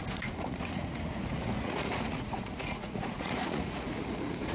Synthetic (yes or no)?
yes